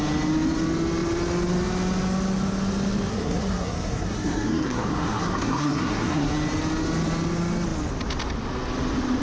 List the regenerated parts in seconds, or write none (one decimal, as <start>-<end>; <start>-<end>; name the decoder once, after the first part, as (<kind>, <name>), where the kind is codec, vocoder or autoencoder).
3.1-6.3 (codec, SNAC)